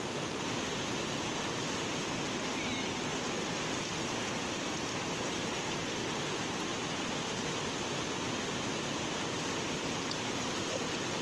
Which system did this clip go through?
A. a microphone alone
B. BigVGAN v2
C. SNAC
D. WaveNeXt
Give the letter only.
A